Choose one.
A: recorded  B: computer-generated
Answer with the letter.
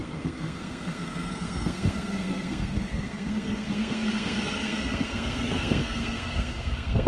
B